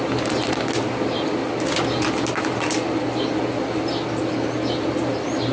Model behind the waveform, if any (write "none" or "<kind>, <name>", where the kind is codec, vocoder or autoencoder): none